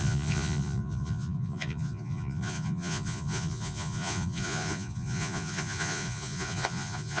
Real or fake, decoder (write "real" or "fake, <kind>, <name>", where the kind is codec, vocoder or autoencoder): fake, vocoder, Vocos